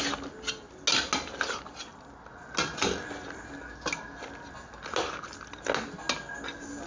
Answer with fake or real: real